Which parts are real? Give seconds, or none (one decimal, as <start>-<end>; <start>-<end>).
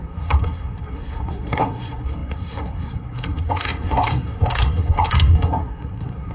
none